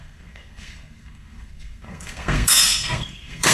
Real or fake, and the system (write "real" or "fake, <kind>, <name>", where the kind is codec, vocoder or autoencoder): fake, codec, SNAC